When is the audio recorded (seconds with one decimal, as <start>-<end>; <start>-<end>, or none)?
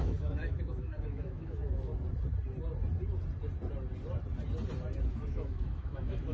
1.6-5.1